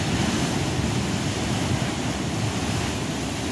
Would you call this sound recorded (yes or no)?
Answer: yes